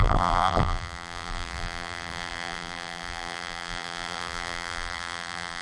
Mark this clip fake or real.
fake